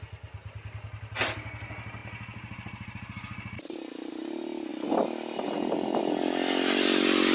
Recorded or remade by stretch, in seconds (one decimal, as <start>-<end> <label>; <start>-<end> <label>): 0.0-7.3 recorded